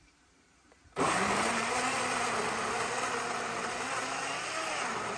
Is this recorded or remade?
remade